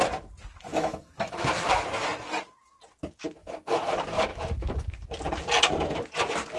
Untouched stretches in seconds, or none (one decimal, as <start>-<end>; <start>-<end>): 0.0-0.7; 1.7-3.4; 3.9-4.3; 5.0-6.6